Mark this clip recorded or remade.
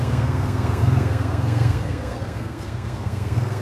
remade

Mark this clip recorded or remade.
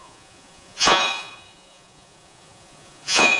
remade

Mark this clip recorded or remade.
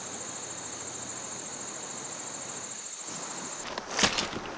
recorded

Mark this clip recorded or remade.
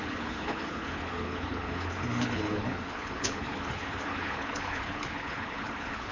remade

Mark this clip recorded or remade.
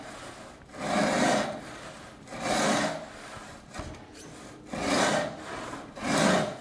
recorded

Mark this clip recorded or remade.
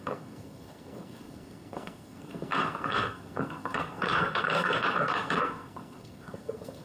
remade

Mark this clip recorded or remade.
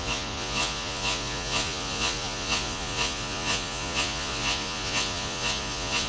remade